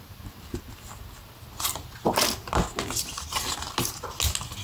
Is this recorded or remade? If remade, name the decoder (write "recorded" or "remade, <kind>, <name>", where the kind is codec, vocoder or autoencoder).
recorded